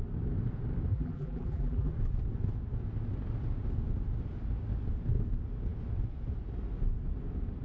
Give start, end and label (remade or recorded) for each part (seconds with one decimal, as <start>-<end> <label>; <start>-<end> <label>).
0.0-0.9 recorded; 0.9-1.9 remade; 1.9-7.6 recorded